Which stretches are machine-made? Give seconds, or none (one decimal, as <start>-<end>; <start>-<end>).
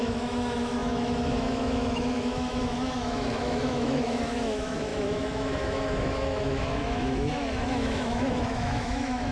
0.0-9.3